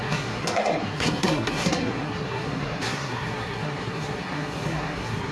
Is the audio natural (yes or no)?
no